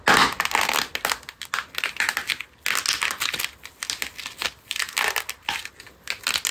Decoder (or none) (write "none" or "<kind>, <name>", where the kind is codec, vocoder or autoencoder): none